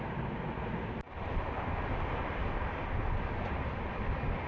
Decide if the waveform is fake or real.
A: real